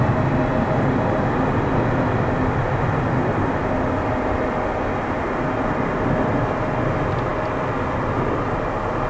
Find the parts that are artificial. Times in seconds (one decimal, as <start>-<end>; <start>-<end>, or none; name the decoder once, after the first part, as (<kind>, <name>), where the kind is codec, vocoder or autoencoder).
none

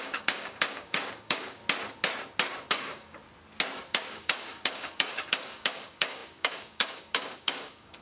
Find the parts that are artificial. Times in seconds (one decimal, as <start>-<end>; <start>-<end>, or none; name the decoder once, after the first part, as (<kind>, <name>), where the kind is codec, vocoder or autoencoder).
0.0-1.6 (codec, DAC); 2.7-3.2; 3.9-8.0

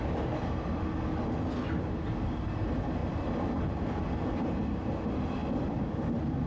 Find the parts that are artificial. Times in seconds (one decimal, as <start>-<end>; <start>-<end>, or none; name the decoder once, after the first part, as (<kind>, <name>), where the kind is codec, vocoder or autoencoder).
3.0-4.0 (vocoder, BigVGAN v2)

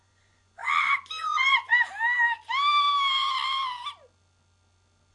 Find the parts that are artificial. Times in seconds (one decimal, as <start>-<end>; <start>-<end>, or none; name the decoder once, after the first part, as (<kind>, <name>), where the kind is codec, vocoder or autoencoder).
0.0-0.6 (vocoder, Vocos); 1.2-1.7

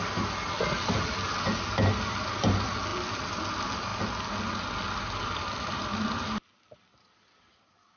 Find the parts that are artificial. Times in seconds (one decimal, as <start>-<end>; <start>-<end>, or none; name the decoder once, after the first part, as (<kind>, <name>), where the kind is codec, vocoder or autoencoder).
none

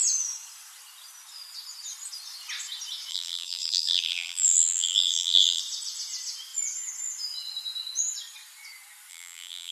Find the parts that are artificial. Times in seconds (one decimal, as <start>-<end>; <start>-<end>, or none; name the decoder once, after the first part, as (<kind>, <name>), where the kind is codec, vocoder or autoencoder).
3.1-5.6 (vocoder, BigVGAN v2); 9.1-9.7